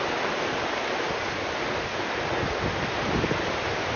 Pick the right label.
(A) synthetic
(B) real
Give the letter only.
B